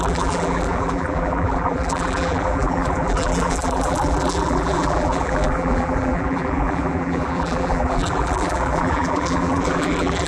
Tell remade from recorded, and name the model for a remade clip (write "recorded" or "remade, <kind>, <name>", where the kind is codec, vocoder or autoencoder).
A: remade, vocoder, BigVGAN v2